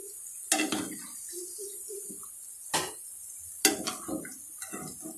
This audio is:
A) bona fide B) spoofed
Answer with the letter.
A